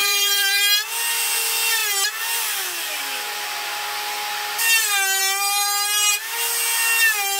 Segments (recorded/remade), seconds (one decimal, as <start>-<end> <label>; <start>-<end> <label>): 0.0-0.6 remade; 0.6-7.4 recorded

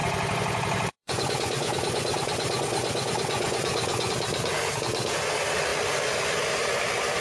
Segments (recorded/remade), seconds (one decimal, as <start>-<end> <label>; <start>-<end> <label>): 0.0-4.1 remade; 4.1-7.2 recorded

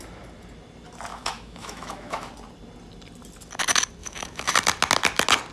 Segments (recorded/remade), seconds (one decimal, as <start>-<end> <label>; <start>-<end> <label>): 0.0-1.1 recorded; 1.1-2.3 remade; 2.3-4.0 recorded; 4.0-4.5 remade; 4.5-5.5 recorded

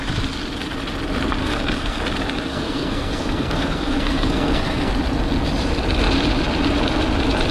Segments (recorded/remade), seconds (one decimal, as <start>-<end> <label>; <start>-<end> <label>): 0.0-1.4 recorded; 1.4-2.0 remade; 2.0-2.5 recorded; 2.5-4.9 remade; 4.9-7.5 recorded

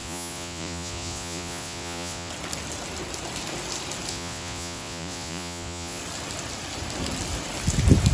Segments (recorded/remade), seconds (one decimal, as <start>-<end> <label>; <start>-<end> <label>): 0.0-2.3 remade; 2.3-4.1 recorded; 4.1-6.0 remade; 6.0-8.1 recorded

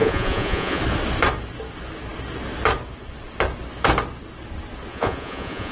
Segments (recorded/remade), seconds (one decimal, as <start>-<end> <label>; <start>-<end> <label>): 0.0-0.8 remade; 0.8-4.9 recorded; 4.9-5.7 remade